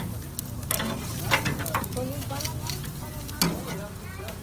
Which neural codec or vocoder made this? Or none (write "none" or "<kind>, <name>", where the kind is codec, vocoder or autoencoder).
none